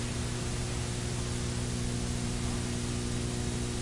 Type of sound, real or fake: real